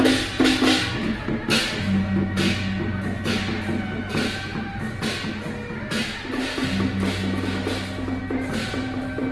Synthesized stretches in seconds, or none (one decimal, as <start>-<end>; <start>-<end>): none